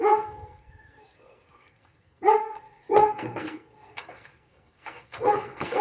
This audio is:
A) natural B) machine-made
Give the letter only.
B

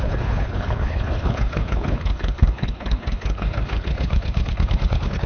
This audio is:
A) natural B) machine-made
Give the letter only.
B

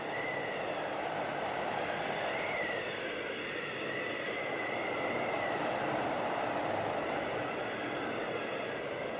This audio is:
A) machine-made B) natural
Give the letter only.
B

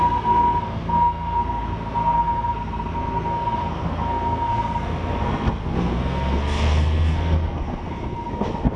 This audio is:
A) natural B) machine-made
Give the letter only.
B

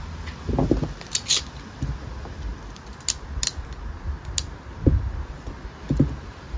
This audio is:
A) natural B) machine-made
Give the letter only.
A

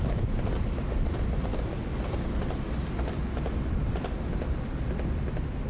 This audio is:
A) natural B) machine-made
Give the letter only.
A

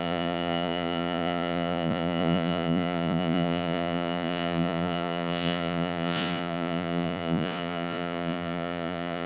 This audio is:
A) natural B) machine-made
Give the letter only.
B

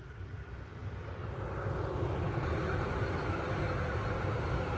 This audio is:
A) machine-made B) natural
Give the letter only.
B